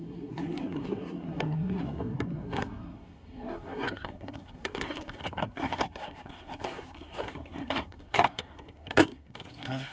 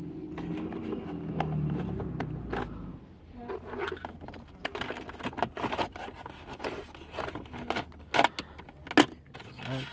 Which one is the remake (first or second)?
first